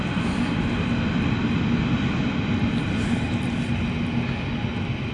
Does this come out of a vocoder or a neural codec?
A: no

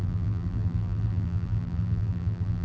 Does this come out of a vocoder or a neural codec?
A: yes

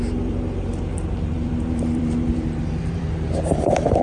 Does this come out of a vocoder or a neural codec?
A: yes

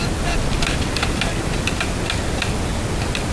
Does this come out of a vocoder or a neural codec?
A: no